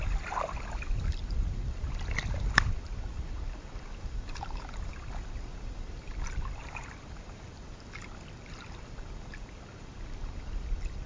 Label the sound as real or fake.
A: real